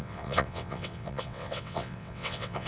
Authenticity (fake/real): fake